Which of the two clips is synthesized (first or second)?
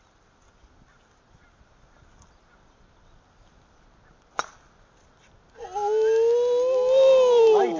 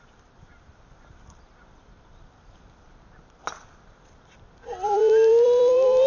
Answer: second